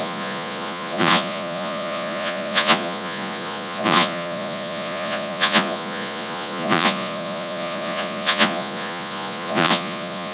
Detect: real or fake fake